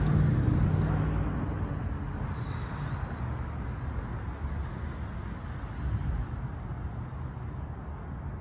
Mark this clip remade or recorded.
recorded